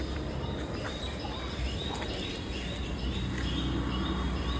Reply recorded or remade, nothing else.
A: recorded